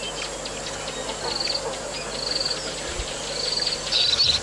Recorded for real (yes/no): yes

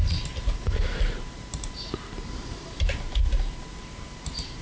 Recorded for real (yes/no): no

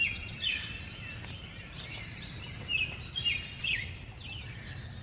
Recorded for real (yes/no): yes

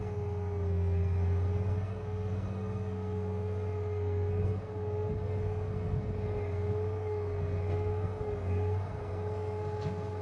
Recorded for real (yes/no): no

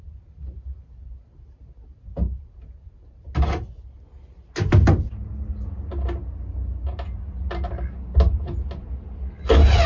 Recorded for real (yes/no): yes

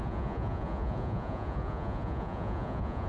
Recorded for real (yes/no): no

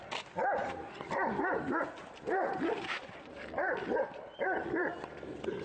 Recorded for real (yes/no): no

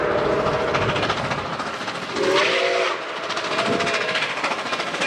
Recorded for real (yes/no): yes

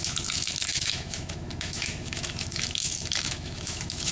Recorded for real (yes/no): no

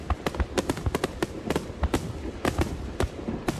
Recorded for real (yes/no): yes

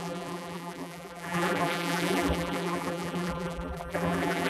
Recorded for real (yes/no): no